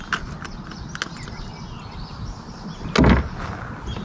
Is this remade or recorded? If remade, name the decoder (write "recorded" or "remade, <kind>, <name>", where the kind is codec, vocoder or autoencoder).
recorded